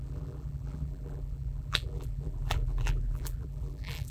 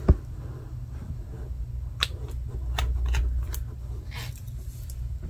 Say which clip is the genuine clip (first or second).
second